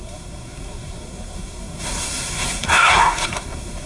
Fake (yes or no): yes